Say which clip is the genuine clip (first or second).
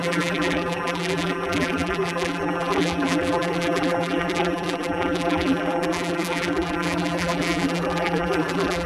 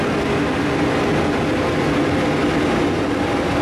second